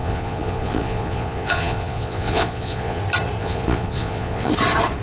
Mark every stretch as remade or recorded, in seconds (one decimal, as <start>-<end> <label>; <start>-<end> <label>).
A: 0.0-3.0 remade; 3.0-3.4 recorded; 3.4-4.5 remade; 4.5-5.0 recorded